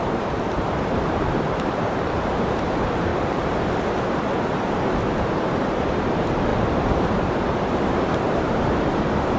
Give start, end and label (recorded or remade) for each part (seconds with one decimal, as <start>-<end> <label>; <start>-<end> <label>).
0.0-3.1 remade; 3.1-4.5 recorded; 4.5-9.4 remade